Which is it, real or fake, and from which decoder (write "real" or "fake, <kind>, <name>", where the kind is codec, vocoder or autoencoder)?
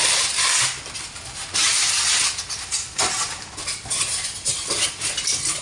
real